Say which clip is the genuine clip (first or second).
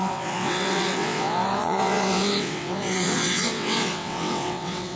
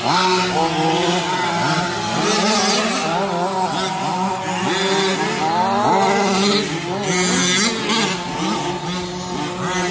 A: second